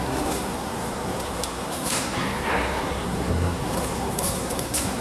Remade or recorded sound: remade